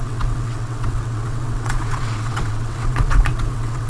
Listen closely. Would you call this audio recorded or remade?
remade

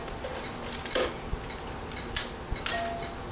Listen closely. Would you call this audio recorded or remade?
recorded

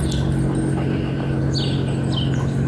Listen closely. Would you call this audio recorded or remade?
recorded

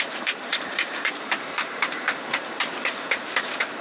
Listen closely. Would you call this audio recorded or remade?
remade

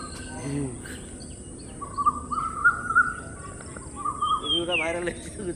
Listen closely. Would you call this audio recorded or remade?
recorded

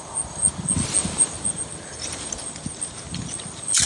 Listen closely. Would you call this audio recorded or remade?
recorded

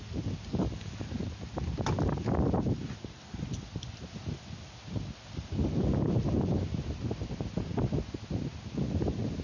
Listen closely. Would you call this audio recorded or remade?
recorded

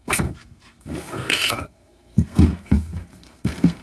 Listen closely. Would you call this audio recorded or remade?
remade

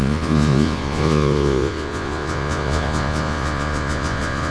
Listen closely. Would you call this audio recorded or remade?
remade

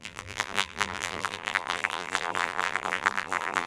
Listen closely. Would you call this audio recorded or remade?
remade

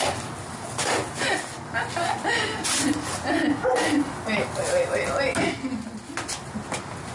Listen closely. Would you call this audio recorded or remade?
recorded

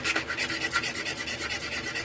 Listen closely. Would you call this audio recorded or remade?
recorded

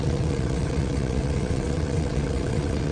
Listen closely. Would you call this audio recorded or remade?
remade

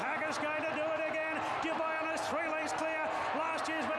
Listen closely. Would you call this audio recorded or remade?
recorded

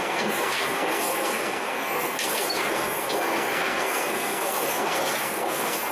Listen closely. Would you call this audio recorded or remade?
remade